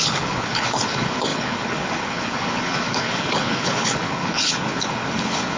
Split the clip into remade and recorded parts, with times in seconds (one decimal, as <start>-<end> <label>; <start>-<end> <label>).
0.0-5.6 remade